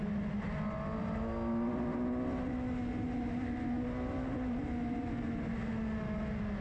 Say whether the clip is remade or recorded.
recorded